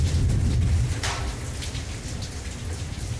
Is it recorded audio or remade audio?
recorded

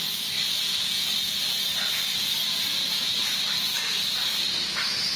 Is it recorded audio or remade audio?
recorded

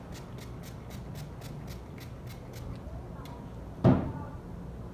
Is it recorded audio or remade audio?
recorded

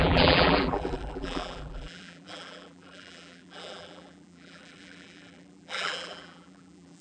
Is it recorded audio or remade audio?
remade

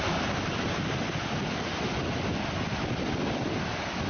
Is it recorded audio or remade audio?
recorded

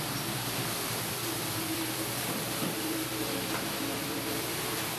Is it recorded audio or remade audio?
remade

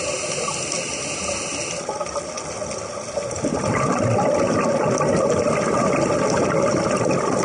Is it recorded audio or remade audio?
recorded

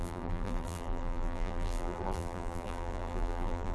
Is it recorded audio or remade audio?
remade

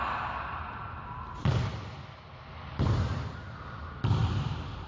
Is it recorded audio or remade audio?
recorded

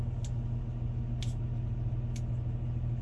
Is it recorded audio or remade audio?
recorded